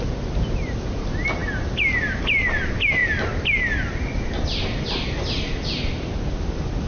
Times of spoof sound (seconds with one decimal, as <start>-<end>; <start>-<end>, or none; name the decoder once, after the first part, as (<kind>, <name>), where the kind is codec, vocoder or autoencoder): none